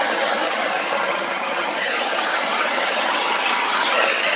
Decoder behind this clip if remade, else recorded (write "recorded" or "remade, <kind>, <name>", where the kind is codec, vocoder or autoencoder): remade, vocoder, HiFi-GAN